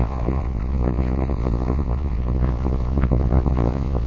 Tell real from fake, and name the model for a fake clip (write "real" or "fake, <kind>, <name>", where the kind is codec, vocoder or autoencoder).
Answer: fake, vocoder, Vocos